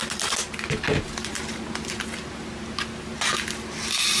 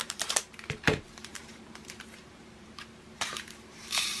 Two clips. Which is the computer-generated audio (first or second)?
second